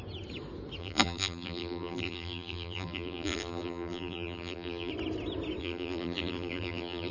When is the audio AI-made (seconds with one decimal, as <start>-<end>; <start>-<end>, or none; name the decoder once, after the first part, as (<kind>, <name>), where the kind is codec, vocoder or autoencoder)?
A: 0.8-4.9 (vocoder, BigVGAN v2); 5.6-7.1